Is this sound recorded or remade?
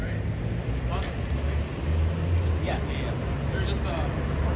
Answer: recorded